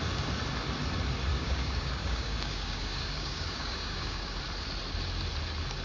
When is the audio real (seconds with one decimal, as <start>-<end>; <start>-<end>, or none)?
0.0-1.3; 4.4-5.8